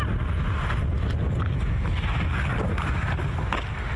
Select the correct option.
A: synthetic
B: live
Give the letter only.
B